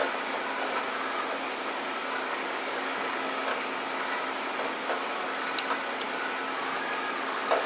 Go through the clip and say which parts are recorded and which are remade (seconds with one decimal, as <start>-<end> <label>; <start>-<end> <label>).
0.0-2.3 recorded; 2.3-3.5 remade; 3.5-6.8 recorded; 6.8-7.7 remade